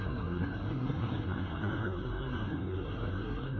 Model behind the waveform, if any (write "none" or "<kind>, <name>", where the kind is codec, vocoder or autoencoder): codec, SNAC